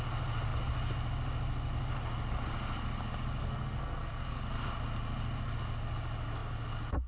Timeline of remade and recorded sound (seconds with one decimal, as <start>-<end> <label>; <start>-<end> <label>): 0.0-3.4 recorded; 3.4-4.4 remade; 4.4-7.1 recorded